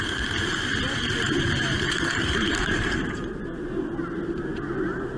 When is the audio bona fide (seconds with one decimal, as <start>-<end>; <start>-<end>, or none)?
0.0-0.7; 3.8-5.2

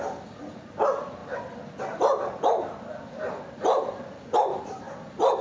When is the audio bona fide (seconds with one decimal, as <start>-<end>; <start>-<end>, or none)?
0.0-5.4